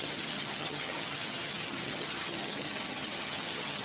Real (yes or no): no